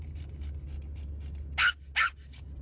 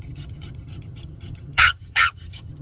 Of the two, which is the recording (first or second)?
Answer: first